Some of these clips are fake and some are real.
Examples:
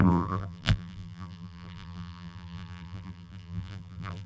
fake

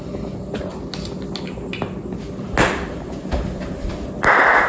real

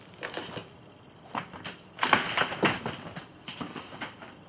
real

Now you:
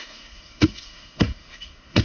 fake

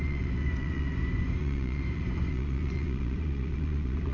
fake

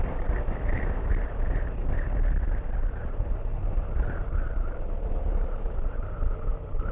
real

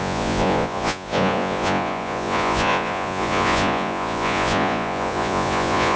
fake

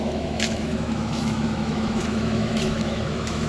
fake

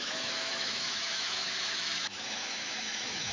fake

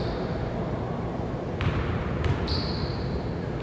real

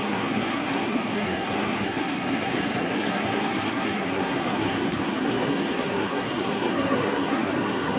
fake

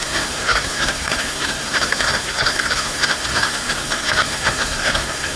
fake